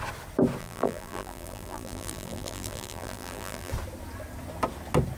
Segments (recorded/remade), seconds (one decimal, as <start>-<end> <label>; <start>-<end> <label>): 0.0-0.6 recorded; 0.6-3.7 remade; 3.7-5.2 recorded